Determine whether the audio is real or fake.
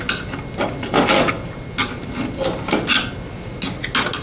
real